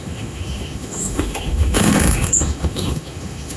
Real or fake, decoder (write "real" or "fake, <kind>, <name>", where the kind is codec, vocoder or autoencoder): fake, autoencoder, DAC-VAE